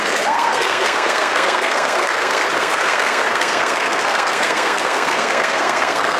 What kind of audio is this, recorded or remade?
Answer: remade